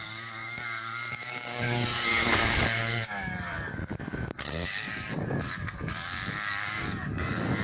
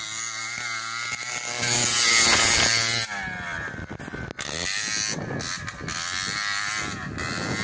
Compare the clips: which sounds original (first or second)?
second